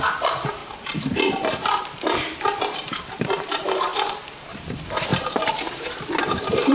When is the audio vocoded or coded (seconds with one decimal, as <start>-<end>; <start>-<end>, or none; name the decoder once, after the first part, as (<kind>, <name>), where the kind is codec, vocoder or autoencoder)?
0.0-6.7 (vocoder, BigVGAN v2)